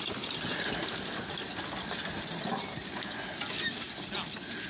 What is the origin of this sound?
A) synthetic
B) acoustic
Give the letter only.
B